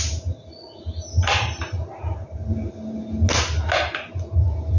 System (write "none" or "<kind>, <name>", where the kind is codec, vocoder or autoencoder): none